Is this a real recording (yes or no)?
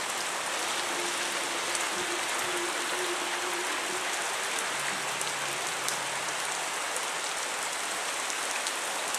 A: yes